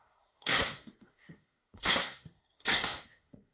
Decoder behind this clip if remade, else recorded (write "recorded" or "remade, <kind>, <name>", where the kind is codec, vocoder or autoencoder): remade, codec, SNAC